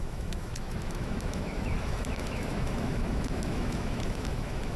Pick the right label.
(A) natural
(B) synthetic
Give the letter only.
B